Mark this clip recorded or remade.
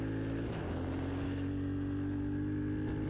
recorded